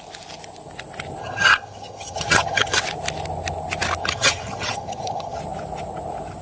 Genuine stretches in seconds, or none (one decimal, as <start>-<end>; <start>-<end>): 0.0-1.2; 2.8-4.0; 5.4-6.4